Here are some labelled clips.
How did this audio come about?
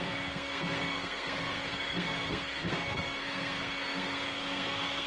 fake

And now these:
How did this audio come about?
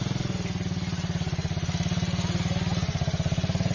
real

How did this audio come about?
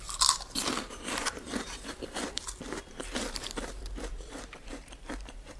fake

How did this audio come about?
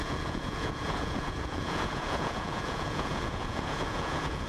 fake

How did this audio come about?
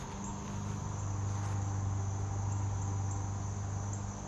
real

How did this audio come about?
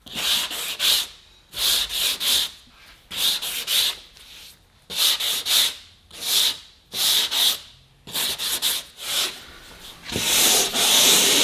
real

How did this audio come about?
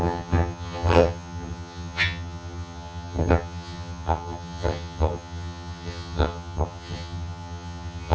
fake